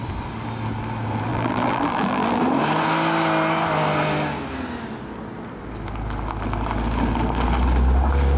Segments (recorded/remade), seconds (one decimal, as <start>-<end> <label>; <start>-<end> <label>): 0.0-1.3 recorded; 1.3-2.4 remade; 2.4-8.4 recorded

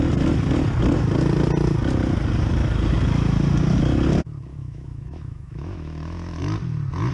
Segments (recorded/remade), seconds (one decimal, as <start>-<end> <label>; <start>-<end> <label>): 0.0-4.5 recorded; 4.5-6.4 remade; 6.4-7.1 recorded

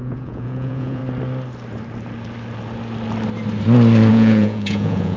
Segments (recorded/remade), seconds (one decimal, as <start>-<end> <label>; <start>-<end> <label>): 0.0-1.0 remade; 1.0-4.1 recorded; 4.1-5.2 remade